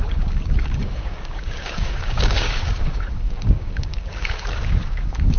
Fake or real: fake